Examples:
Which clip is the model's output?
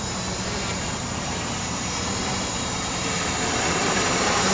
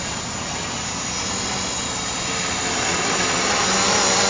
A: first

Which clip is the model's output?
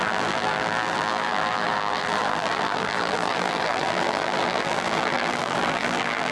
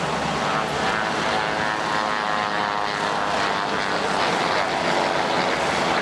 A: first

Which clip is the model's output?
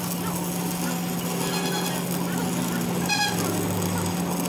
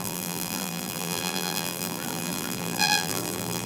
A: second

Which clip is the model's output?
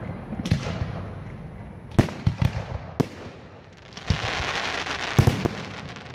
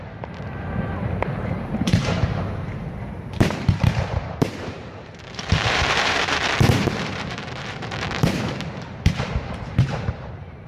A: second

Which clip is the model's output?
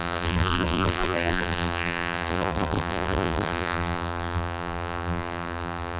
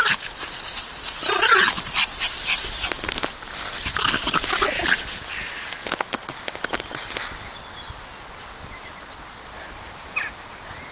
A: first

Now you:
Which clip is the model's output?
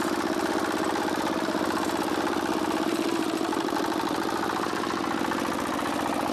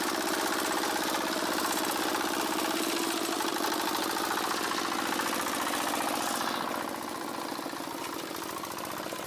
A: first